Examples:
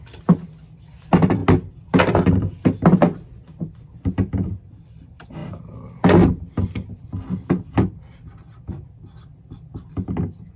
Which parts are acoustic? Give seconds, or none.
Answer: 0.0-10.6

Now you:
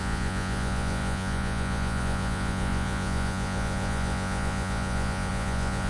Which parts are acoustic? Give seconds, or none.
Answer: none

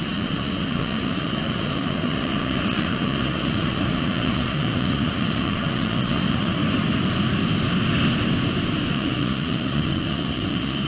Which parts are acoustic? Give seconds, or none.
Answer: 6.6-8.9

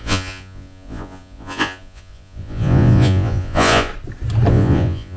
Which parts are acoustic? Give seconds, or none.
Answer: 3.9-4.5

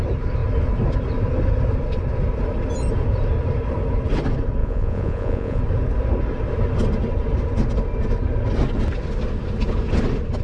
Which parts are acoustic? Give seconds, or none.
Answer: 0.0-4.6; 5.6-10.4